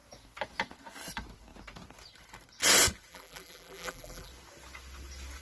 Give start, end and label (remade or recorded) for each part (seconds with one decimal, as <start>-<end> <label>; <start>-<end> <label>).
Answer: 0.0-3.1 recorded; 3.1-4.3 remade; 4.3-5.4 recorded